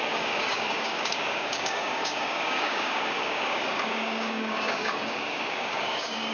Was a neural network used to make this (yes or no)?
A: yes